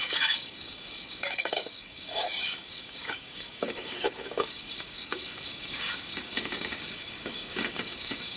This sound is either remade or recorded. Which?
remade